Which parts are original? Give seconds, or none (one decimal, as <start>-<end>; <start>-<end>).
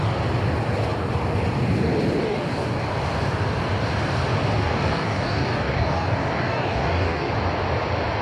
0.0-2.2; 2.8-4.6; 7.3-8.2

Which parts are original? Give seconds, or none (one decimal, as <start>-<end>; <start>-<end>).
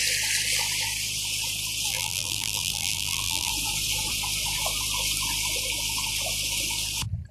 0.0-1.9; 3.5-7.3